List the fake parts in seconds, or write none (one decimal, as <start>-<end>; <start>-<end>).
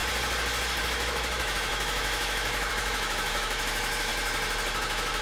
0.8-4.1; 4.8-5.2